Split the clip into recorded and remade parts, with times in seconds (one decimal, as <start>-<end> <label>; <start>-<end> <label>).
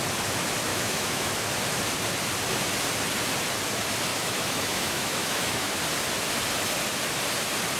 0.0-0.7 recorded; 0.7-1.3 remade; 1.3-4.1 recorded; 4.1-5.8 remade; 5.8-7.8 recorded